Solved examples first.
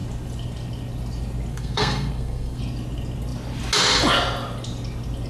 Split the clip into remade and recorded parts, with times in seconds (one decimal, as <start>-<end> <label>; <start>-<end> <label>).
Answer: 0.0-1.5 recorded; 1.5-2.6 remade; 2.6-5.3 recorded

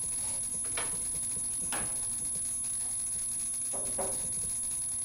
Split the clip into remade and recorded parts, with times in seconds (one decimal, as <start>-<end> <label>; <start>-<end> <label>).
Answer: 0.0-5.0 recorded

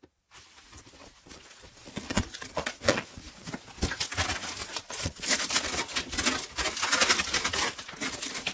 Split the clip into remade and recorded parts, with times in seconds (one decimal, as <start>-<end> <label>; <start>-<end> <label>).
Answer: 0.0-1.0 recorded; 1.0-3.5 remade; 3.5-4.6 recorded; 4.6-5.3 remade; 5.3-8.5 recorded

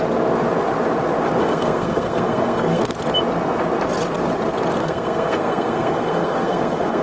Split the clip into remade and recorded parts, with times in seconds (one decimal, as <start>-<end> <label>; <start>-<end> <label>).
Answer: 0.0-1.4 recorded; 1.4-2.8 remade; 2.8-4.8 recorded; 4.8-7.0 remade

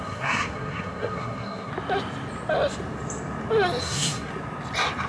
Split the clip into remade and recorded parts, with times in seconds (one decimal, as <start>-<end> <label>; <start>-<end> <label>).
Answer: 0.0-1.7 remade; 1.7-3.8 recorded; 3.8-4.3 remade; 4.3-5.1 recorded

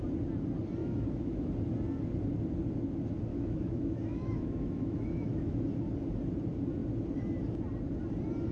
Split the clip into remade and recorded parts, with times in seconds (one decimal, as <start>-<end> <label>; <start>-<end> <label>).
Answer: 0.0-0.8 recorded; 0.8-1.5 remade; 1.5-3.3 recorded; 3.3-5.6 remade; 5.6-8.5 recorded